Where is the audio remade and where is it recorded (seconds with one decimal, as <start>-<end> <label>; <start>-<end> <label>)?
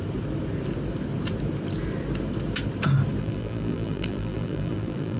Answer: 0.0-3.2 recorded; 3.2-5.2 remade